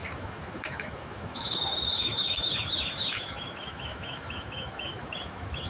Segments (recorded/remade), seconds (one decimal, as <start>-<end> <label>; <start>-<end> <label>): 0.0-5.7 remade